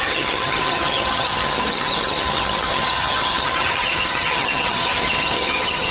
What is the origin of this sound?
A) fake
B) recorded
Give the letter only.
A